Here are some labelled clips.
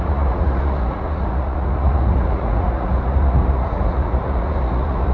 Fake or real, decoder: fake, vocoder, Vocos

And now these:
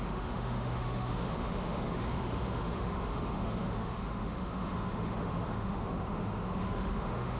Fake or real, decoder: fake, autoencoder, DAC-VAE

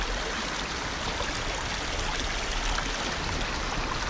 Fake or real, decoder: real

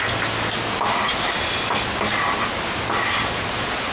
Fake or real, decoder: real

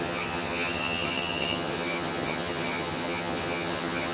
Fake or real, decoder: fake, vocoder, HiFi-GAN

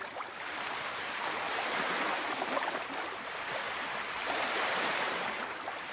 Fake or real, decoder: fake, vocoder, BigVGAN v2